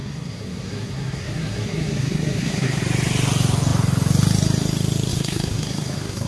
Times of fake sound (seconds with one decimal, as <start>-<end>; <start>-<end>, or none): 0.0-2.8; 5.1-6.3